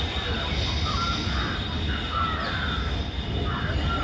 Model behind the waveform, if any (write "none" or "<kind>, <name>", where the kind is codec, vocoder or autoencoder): none